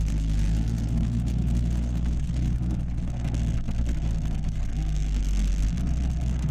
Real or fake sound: fake